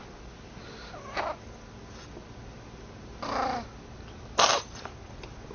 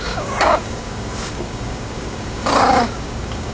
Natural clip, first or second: first